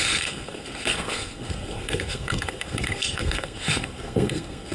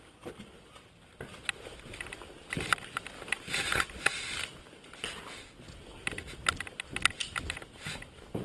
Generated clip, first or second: first